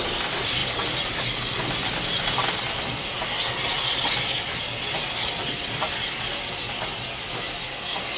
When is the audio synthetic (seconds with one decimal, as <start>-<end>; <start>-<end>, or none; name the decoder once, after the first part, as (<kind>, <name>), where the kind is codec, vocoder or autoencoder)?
none